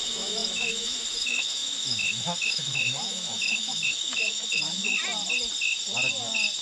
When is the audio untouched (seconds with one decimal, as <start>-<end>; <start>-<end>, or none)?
5.0-6.6